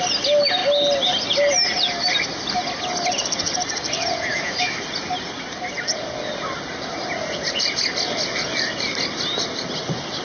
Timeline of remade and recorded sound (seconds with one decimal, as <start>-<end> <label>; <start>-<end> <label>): 0.0-4.3 recorded; 4.3-4.8 remade; 4.8-10.2 recorded